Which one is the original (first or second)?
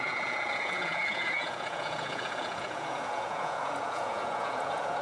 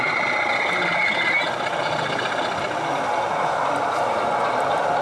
second